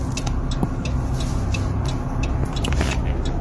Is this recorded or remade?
recorded